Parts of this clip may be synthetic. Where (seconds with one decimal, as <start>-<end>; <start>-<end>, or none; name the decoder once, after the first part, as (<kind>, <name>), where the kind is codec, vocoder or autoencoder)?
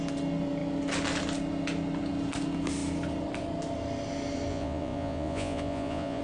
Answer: 4.5-6.2 (vocoder, Vocos)